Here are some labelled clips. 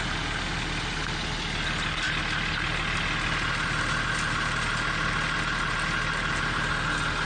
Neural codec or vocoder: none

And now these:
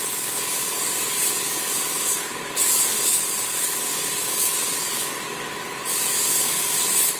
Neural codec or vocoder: codec, DAC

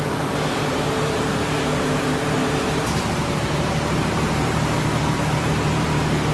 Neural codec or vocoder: vocoder, BigVGAN v2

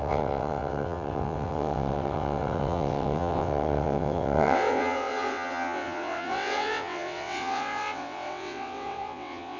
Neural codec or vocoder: vocoder, WaveNeXt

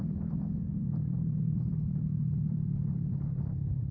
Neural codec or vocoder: vocoder, BigVGAN v2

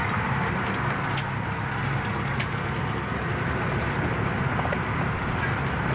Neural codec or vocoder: none